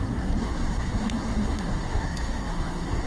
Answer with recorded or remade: remade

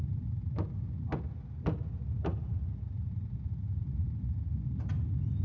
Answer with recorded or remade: recorded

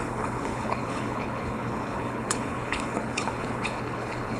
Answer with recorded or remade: remade